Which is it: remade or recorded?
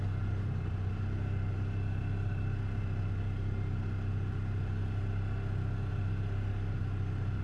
recorded